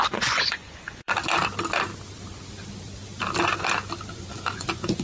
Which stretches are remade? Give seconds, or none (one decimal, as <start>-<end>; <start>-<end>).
0.0-1.1; 4.1-5.0